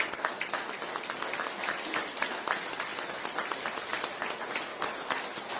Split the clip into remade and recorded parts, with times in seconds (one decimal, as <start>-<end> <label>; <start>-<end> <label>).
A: 0.0-5.6 recorded

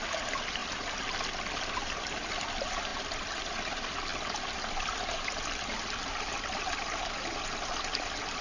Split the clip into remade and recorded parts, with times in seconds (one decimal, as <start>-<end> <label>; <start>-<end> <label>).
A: 0.0-8.4 recorded